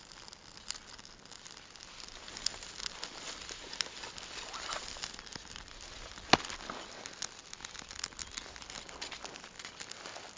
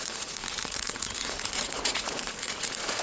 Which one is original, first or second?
first